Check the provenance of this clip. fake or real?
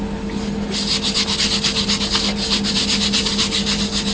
real